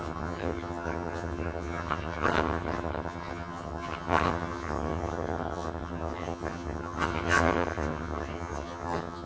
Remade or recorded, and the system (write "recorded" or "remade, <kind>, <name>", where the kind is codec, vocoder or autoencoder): remade, vocoder, HiFi-GAN